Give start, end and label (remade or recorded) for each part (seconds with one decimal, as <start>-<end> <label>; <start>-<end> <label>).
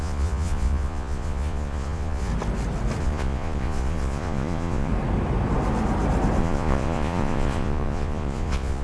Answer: 0.0-2.3 remade; 2.3-3.0 recorded; 3.0-4.9 remade; 4.9-6.4 recorded; 6.4-8.8 remade